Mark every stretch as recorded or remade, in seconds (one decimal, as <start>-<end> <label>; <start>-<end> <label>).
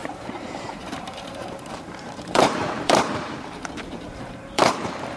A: 0.0-5.2 remade